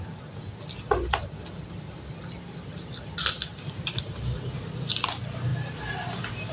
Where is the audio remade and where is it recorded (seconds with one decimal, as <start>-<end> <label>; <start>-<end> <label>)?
0.0-1.2 recorded; 1.2-4.8 remade; 4.8-5.5 recorded; 5.5-6.5 remade